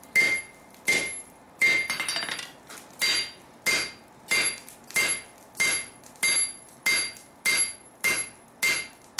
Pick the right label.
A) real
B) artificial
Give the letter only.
A